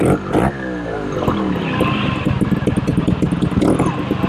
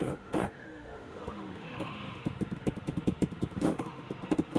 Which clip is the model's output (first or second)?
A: second